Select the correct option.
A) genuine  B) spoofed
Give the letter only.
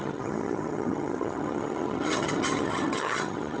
B